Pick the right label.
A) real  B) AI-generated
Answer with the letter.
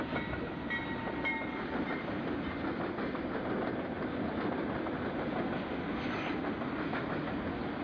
A